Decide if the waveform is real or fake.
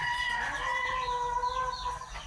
real